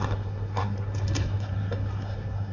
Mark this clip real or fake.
fake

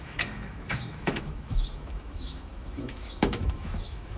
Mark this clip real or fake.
fake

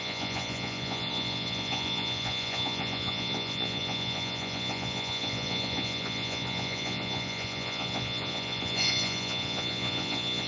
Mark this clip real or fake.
fake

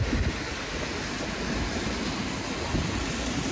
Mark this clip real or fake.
real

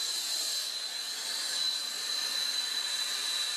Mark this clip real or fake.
fake